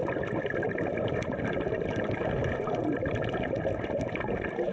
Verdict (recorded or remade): recorded